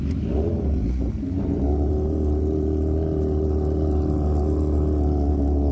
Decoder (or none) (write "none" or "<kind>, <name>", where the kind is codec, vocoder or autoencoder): none